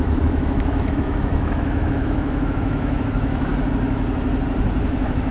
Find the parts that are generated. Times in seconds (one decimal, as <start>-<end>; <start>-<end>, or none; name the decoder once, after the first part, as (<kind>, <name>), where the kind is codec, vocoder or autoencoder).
0.0-3.5 (autoencoder, DAC-VAE); 4.8-5.3